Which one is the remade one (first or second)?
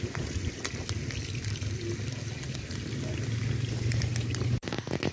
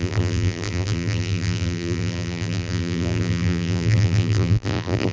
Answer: second